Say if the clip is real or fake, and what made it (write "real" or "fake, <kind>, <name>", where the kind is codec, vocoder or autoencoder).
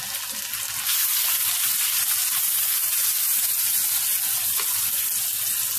real